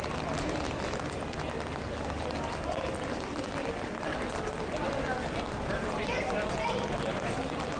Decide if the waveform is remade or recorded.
recorded